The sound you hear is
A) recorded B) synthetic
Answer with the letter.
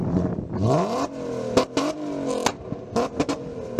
A